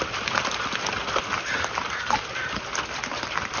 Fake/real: fake